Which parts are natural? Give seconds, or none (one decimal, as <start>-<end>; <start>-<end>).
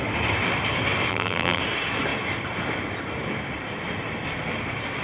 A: 0.0-1.1; 1.6-5.0